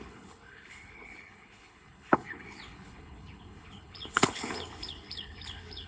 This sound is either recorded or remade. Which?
remade